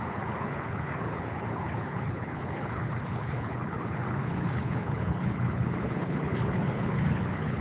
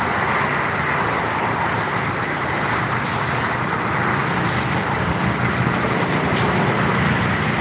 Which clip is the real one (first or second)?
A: second